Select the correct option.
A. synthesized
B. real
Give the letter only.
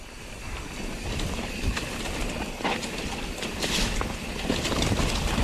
A